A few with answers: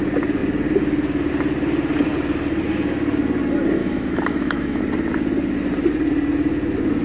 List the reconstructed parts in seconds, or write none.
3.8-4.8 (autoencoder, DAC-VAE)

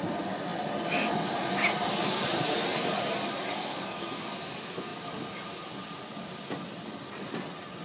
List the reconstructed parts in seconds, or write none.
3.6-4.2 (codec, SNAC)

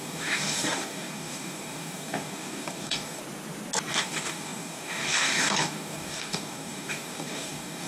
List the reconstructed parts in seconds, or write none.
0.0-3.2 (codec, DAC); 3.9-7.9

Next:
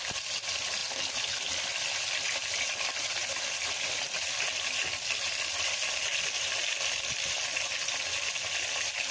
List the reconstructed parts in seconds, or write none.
none

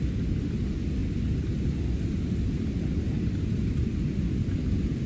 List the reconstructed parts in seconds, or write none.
none

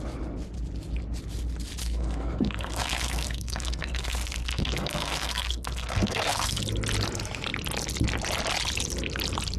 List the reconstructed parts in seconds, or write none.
1.8-6.6 (codec, SNAC)

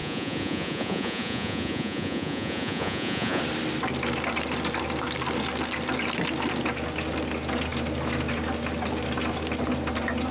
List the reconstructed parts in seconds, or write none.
0.0-3.4 (vocoder, Vocos)